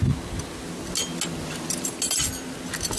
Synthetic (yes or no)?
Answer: no